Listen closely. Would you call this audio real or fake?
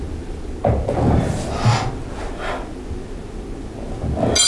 real